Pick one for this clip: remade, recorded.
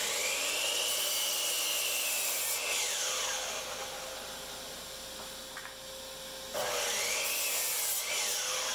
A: recorded